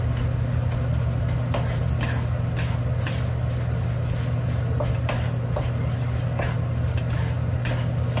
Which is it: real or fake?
real